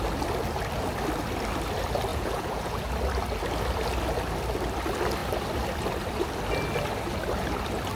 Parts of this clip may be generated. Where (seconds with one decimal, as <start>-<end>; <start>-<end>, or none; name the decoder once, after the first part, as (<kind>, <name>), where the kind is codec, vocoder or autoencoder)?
2.1-2.9 (vocoder, Vocos)